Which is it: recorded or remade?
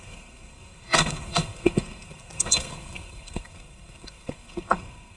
remade